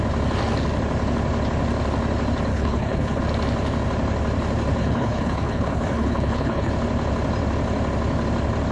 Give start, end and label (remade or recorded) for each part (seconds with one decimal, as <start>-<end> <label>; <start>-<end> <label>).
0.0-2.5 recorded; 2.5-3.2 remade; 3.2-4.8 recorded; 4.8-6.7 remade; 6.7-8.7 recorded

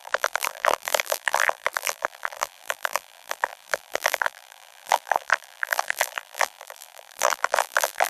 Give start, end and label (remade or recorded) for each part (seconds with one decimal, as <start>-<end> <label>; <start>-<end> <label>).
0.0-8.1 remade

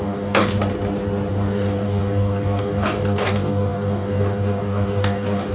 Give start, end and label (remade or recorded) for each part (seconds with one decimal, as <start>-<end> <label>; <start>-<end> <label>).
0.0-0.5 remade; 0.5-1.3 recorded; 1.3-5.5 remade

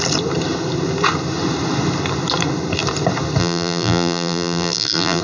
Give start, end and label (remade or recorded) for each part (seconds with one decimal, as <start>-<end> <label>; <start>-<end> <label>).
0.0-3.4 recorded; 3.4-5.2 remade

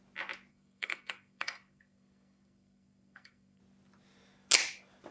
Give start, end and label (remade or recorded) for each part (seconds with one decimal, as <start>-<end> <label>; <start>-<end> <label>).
0.0-0.5 recorded; 0.5-3.6 remade; 3.6-5.1 recorded

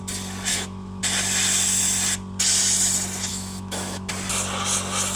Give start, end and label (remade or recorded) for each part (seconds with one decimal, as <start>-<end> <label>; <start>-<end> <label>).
0.0-0.5 recorded; 0.5-1.0 remade; 1.0-3.3 recorded; 3.3-4.1 remade; 4.1-5.2 recorded

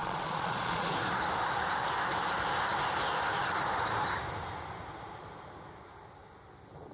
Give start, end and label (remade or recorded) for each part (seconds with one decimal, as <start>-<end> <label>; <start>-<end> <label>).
0.0-0.9 remade; 0.9-6.9 recorded

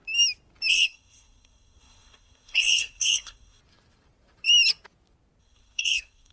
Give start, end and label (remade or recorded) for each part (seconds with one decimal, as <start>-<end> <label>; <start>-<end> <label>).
0.0-0.7 recorded; 0.7-3.6 remade; 3.6-5.4 recorded; 5.4-6.3 remade